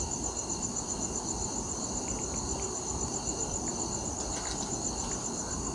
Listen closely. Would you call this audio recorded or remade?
recorded